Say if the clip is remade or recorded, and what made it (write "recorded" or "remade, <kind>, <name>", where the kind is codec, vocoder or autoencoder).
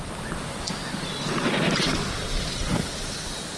remade, vocoder, BigVGAN v2